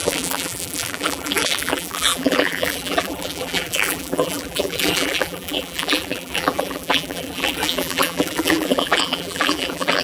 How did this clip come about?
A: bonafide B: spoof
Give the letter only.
B